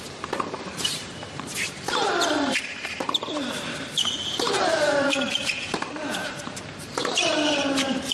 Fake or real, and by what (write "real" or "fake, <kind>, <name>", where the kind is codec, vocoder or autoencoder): fake, vocoder, BigVGAN v2